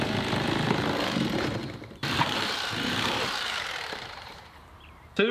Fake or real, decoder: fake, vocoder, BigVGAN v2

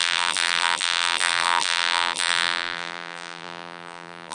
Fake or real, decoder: fake, vocoder, BigVGAN v2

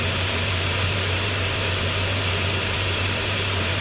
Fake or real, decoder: fake, vocoder, BigVGAN v2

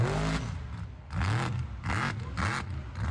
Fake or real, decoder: real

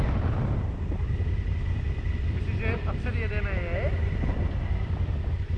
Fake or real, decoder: real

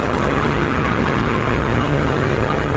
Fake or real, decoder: fake, vocoder, HiFi-GAN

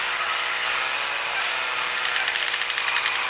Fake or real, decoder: real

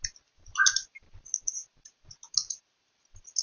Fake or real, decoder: real